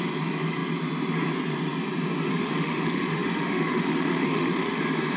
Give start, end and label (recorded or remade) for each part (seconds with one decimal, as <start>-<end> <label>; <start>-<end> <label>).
0.0-2.3 recorded; 2.3-4.8 remade; 4.8-5.2 recorded